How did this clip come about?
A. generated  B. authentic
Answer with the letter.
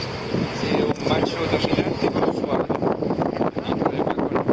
B